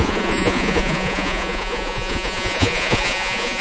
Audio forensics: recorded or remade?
remade